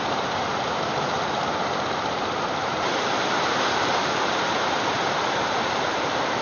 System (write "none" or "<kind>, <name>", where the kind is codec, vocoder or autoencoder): vocoder, BigVGAN v2